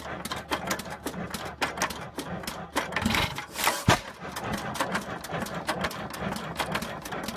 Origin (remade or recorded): recorded